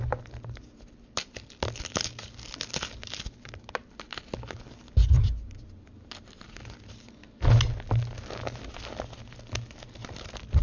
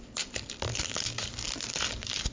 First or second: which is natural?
first